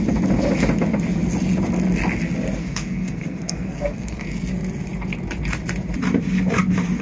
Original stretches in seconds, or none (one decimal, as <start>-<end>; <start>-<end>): 0.0-2.6; 4.4-7.0